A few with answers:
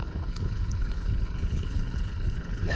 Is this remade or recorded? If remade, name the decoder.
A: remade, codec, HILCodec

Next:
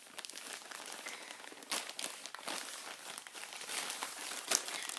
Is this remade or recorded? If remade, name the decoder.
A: recorded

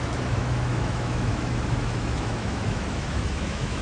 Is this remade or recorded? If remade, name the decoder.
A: remade, autoencoder, DAC-VAE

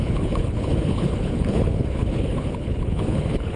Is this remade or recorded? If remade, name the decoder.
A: remade, codec, HILCodec